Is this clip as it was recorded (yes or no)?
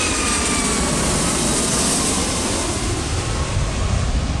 yes